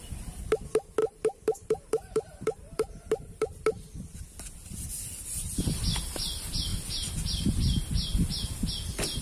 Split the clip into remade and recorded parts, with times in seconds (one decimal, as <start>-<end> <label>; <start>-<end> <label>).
0.0-1.0 recorded; 1.0-3.6 remade; 3.6-9.2 recorded